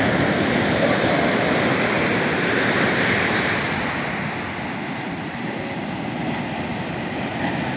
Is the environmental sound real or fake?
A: real